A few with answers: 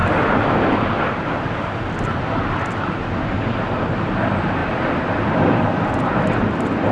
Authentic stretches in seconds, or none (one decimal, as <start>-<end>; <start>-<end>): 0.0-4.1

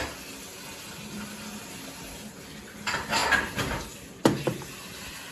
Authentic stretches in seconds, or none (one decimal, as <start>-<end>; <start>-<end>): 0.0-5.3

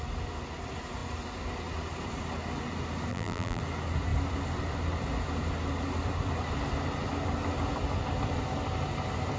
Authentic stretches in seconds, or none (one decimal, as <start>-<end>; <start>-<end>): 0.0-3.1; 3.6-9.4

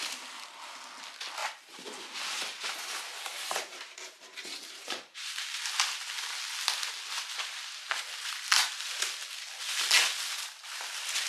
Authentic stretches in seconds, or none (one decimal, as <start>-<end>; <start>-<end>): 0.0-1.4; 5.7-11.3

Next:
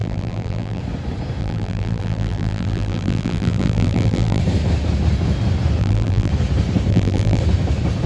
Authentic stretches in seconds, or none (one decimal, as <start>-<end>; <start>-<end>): 0.8-1.4; 4.4-5.8; 6.3-6.9; 7.4-8.1

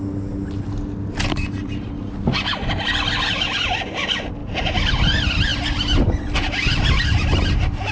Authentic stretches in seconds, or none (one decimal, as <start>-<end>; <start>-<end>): 0.0-4.4; 4.9-7.9

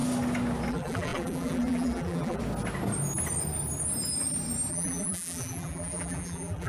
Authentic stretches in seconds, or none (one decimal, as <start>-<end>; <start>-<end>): 0.0-0.7; 2.4-4.7